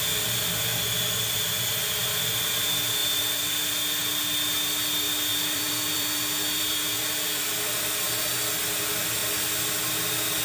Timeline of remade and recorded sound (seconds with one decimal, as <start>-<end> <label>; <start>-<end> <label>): 0.0-3.0 recorded; 3.0-3.7 remade; 3.7-5.3 recorded; 5.3-7.4 remade; 7.4-10.4 recorded